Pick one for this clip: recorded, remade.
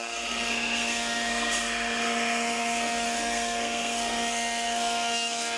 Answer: remade